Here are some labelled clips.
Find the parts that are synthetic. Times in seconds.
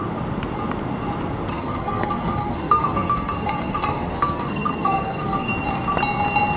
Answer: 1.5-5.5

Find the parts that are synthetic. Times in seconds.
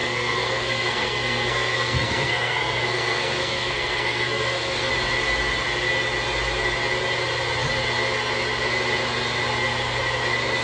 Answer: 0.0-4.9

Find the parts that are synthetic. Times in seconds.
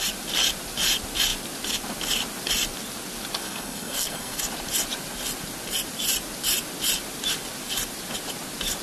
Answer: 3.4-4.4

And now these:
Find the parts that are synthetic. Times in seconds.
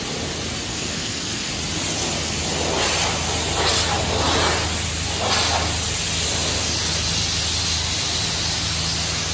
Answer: 0.7-1.5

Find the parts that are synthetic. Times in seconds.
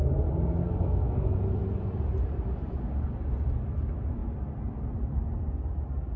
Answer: 0.6-1.3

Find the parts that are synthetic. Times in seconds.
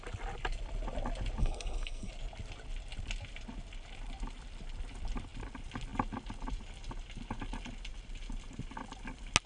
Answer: 1.4-2.1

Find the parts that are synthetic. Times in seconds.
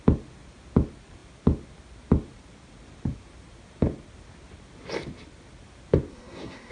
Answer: 6.1-6.7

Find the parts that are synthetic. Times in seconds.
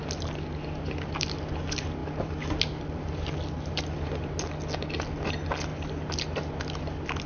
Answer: none